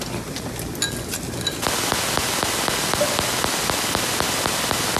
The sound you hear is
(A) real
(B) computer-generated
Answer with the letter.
A